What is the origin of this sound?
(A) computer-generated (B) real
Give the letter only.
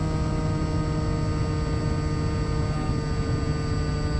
B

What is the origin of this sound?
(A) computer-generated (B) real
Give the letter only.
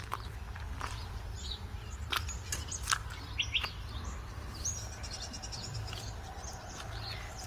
B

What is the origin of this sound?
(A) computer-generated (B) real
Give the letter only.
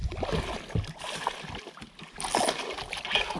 B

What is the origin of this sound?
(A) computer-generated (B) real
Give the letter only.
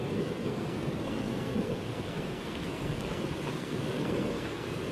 A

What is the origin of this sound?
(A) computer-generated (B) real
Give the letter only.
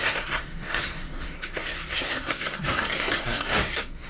A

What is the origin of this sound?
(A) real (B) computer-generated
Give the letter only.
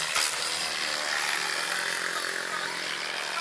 A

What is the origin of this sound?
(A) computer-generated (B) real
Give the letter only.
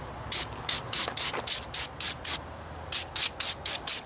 B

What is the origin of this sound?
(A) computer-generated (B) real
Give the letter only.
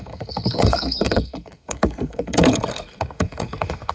A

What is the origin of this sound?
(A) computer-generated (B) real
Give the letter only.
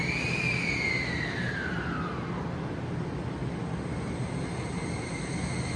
B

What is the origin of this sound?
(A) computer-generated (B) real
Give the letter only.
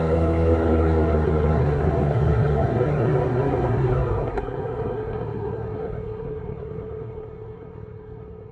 A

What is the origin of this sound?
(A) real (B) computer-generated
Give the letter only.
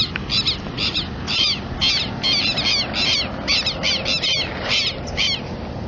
A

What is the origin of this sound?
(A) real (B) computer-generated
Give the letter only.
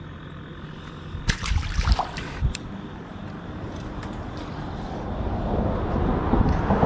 A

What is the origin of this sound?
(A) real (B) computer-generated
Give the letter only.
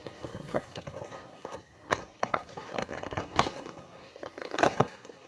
B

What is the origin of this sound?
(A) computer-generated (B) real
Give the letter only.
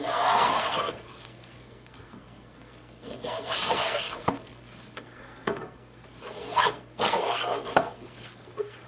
A